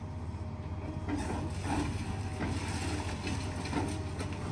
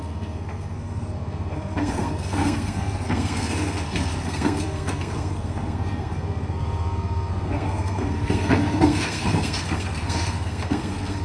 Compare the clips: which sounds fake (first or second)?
second